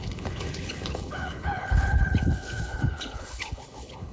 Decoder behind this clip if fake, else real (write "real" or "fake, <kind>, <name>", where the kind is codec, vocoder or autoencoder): fake, codec, HILCodec